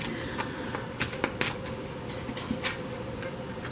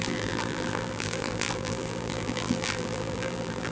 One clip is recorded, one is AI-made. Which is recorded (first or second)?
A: first